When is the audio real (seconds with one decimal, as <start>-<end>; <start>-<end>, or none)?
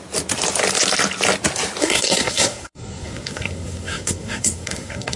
0.0-1.8